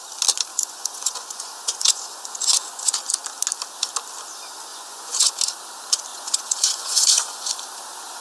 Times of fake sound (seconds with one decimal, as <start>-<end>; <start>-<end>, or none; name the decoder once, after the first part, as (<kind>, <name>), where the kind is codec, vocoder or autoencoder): 0.5-3.1 (vocoder, Vocos); 4.7-5.3; 6.1-7.5